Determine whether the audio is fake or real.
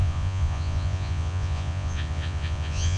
fake